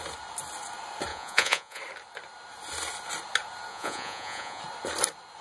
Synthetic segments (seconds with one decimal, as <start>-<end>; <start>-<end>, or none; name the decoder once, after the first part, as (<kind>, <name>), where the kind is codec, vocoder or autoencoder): 1.1-1.8 (vocoder, Vocos); 3.7-4.6